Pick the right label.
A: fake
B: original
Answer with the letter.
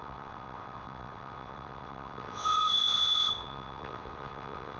A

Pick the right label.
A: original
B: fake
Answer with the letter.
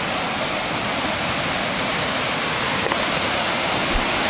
A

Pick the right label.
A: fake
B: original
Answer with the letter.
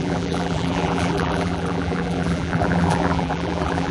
A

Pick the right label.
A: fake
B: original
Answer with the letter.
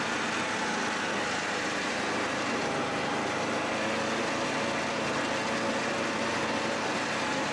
B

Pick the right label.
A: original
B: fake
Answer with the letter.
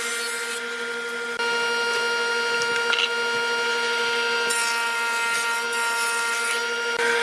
A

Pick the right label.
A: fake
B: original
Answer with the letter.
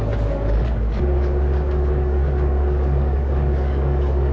A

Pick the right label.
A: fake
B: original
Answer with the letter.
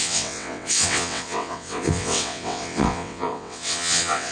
A